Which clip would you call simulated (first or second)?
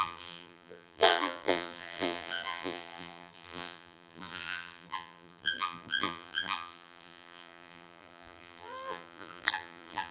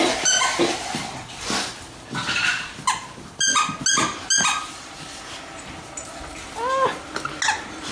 first